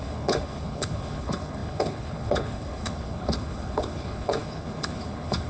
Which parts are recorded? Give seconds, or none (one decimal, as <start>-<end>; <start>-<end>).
none